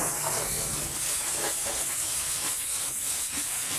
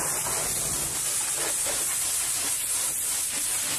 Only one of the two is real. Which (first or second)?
second